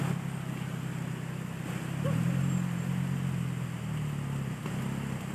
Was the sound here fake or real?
real